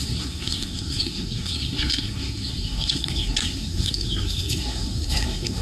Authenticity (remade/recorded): remade